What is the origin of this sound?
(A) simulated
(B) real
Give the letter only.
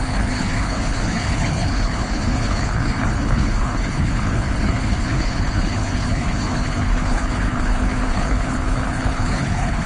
A